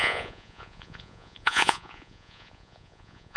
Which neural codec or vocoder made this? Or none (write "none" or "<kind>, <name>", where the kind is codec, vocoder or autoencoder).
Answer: vocoder, Vocos